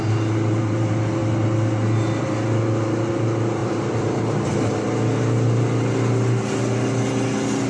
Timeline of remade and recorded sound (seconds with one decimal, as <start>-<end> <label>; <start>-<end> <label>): 0.0-7.7 recorded